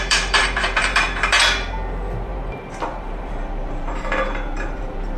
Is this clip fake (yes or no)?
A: yes